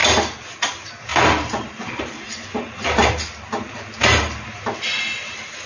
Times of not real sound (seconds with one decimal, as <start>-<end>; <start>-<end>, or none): 1.1-4.5